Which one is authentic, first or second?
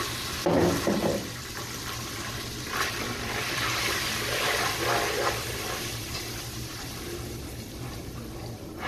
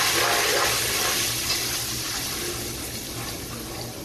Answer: second